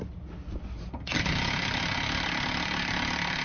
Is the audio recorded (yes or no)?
yes